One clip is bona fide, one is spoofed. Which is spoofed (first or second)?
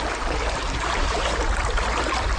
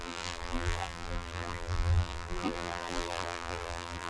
second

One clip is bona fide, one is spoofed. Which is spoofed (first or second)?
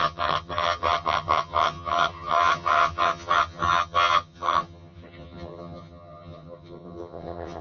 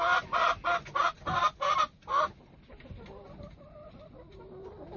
first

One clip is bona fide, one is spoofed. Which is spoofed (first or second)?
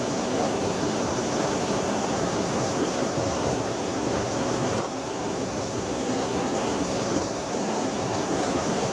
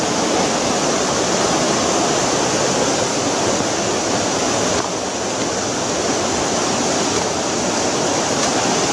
first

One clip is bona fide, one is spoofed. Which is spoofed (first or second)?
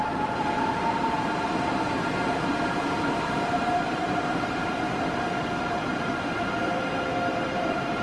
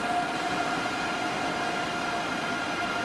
first